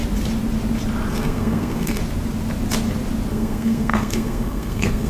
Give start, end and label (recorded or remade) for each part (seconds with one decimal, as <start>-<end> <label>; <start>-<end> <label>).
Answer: 0.0-1.1 recorded; 1.1-2.0 remade; 2.0-3.3 recorded; 3.3-5.1 remade